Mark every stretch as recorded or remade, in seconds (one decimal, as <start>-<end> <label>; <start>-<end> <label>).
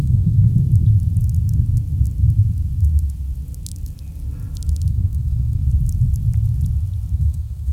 0.0-0.5 remade; 0.5-4.9 recorded; 4.9-5.6 remade; 5.6-7.1 recorded; 7.1-7.7 remade